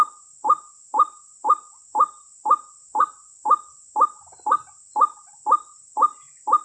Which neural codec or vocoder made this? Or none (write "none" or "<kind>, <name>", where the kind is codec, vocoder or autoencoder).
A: none